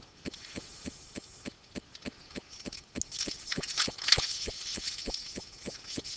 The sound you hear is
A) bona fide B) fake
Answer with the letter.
A